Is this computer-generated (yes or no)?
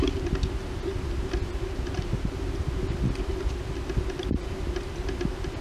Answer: no